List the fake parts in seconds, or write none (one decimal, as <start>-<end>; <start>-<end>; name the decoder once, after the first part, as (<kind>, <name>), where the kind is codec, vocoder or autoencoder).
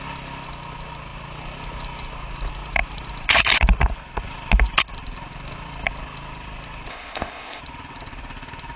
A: 6.9-7.6 (codec, ZipCodec)